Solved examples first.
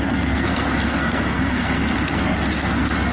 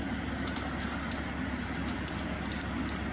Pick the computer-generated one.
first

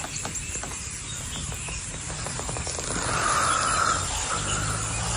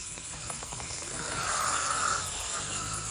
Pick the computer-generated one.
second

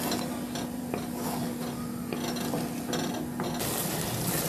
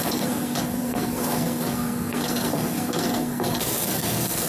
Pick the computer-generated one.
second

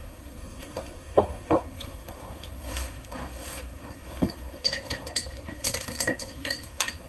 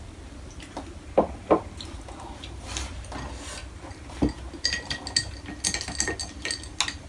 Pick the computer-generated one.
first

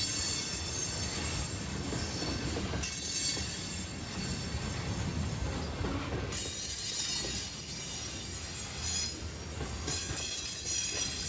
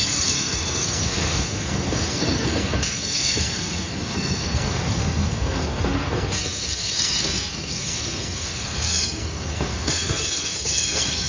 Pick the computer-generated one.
second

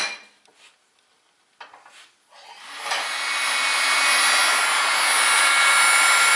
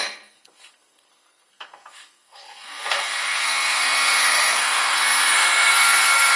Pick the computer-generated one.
second